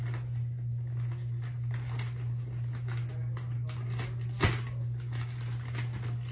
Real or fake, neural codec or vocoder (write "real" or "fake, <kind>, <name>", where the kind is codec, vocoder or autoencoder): real